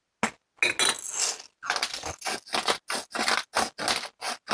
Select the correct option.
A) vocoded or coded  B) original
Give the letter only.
B